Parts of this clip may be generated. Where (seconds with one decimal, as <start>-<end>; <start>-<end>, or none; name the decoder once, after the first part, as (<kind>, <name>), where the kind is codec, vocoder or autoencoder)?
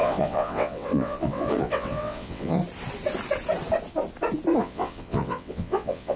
0.0-2.6 (vocoder, WaveNeXt); 4.6-6.2